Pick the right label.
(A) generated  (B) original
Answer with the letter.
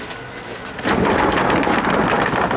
B